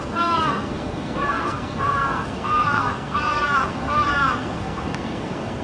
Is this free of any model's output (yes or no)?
no